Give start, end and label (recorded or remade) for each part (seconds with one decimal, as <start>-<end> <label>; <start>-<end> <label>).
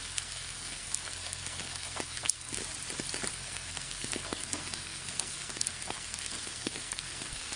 0.0-2.6 remade; 2.6-3.3 recorded; 3.3-7.6 remade